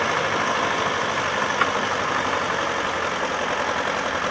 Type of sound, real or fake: real